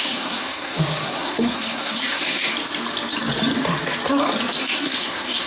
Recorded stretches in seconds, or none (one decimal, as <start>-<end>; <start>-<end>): 2.5-4.6

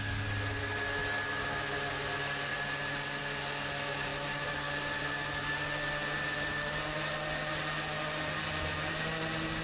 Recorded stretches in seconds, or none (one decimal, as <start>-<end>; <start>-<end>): 0.0-9.6